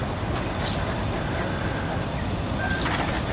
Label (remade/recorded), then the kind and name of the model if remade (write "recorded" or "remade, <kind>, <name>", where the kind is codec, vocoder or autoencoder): recorded